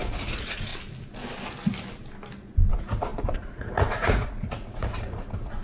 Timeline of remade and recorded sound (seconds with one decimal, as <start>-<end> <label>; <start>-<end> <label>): 0.0-0.7 remade; 0.7-2.7 recorded; 2.7-5.6 remade